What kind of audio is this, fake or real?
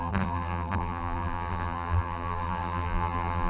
fake